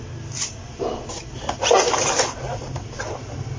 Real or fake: real